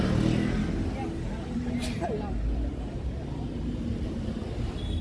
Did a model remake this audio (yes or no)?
no